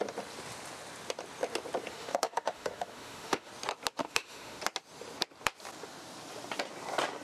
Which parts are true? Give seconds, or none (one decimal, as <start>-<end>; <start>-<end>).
0.0-1.9; 3.5-4.0; 4.6-7.2